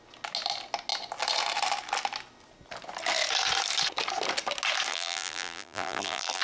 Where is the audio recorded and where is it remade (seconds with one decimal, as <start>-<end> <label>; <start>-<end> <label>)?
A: 0.0-4.9 recorded; 4.9-6.4 remade